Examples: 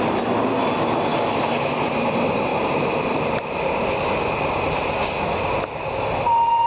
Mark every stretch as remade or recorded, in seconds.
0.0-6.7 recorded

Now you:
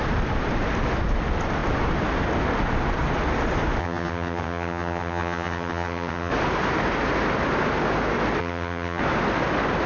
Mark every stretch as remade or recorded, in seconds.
0.0-3.8 recorded; 3.8-6.3 remade; 6.3-8.4 recorded; 8.4-9.0 remade; 9.0-9.9 recorded